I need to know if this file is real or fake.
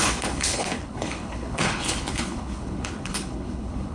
fake